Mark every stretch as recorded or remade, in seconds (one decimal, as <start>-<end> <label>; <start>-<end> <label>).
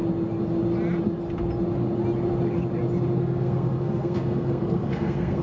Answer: 0.0-3.2 recorded; 3.2-5.4 remade